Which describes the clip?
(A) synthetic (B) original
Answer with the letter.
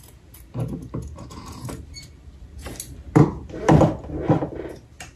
B